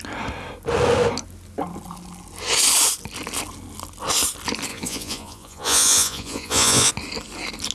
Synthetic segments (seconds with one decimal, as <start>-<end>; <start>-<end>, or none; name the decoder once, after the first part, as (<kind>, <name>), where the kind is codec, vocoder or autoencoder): 4.7-6.9 (vocoder, Vocos)